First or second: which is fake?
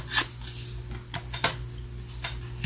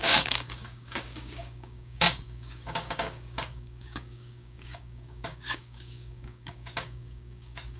second